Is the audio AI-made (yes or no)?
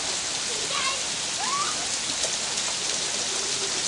no